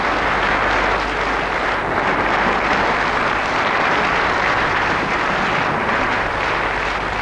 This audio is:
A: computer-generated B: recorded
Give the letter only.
B